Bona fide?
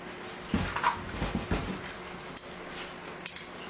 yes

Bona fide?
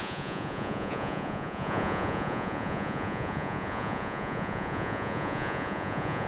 no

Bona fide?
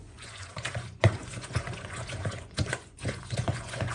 no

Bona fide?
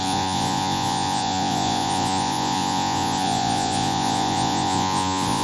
no